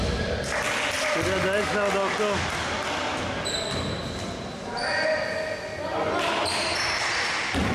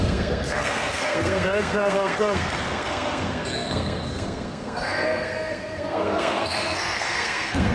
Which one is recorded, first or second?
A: first